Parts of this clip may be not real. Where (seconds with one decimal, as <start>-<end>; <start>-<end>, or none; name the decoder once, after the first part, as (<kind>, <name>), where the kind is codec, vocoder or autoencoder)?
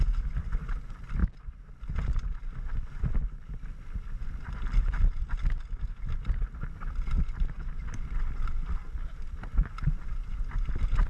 none